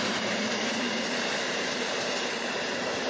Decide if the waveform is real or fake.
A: fake